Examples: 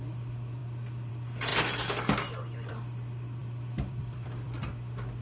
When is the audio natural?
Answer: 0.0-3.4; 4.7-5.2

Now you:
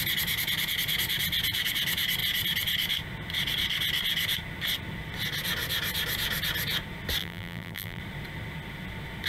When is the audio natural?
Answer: 0.0-7.2; 8.0-9.3